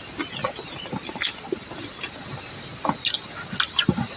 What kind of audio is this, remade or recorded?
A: recorded